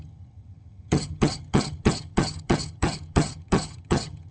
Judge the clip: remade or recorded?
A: remade